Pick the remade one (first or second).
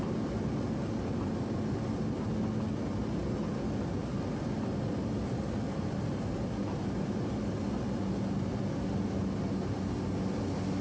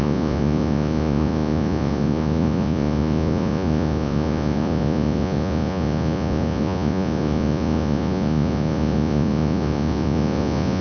second